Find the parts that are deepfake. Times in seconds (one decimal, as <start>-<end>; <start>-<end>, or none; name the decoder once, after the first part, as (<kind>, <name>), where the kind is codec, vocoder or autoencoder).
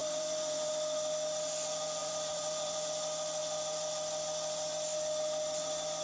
0.0-0.7 (vocoder, BigVGAN v2); 2.0-2.9